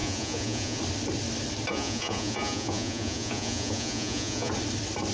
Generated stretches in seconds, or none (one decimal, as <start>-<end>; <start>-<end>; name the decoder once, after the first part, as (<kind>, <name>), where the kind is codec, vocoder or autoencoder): 0.0-0.8 (vocoder, Vocos); 1.7-4.5